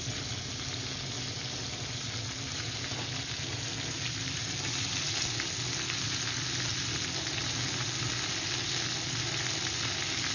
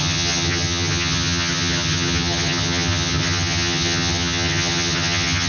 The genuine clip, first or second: first